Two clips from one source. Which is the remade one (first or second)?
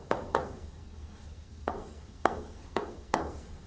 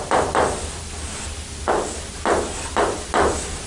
first